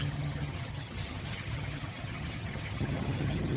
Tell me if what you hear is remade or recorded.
remade